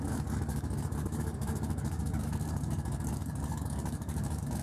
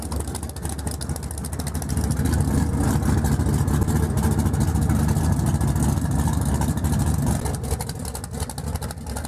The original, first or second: second